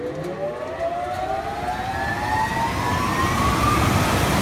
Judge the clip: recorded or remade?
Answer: recorded